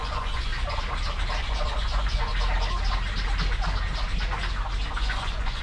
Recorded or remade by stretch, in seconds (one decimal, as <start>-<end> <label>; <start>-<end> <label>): 0.0-0.5 remade; 0.5-1.4 recorded; 1.4-2.3 remade; 2.3-4.9 recorded; 4.9-5.6 remade